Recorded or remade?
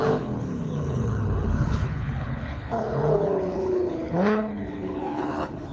remade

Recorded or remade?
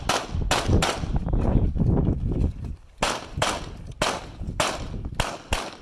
recorded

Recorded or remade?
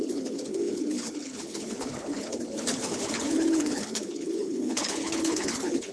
remade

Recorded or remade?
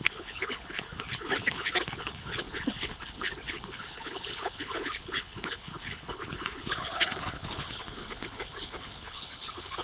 remade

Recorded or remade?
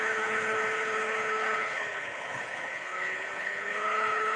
remade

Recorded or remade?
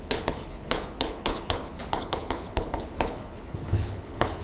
remade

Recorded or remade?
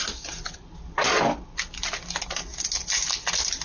recorded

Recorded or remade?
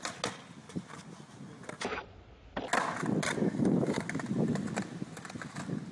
recorded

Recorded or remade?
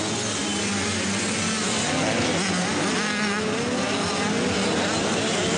recorded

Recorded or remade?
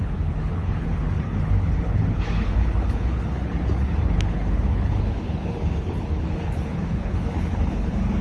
remade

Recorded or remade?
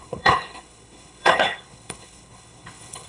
remade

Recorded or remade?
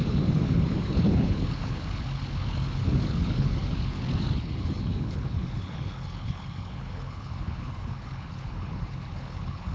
remade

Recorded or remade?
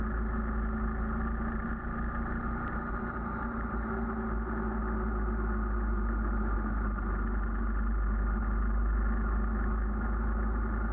recorded